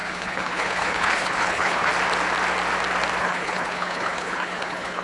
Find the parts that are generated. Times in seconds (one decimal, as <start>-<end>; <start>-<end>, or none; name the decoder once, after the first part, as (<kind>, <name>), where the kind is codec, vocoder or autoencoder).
0.0-1.9 (codec, HILCodec); 3.2-5.0